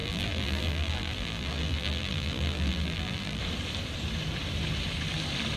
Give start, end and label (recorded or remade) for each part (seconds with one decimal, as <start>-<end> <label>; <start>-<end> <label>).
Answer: 0.0-3.4 remade; 3.4-5.6 recorded